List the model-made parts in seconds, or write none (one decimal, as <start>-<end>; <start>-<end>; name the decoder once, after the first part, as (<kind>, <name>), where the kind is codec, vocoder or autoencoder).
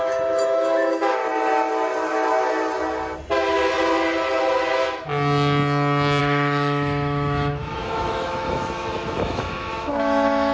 0.0-1.2 (autoencoder, DAC-VAE); 6.2-10.5